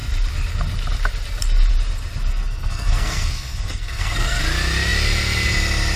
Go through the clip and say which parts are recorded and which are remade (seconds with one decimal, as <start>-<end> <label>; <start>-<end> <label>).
0.0-2.3 recorded; 2.3-4.4 remade; 4.4-6.0 recorded